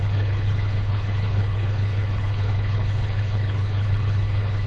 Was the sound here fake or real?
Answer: fake